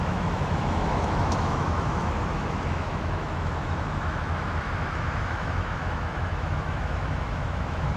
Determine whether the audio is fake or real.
fake